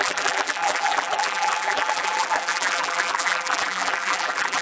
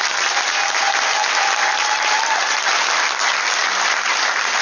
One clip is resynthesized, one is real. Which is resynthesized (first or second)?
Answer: first